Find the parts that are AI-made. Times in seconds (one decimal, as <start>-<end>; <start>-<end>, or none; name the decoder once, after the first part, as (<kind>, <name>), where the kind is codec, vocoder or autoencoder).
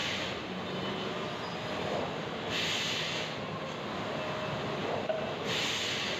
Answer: none